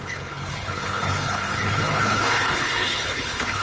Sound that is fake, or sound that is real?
fake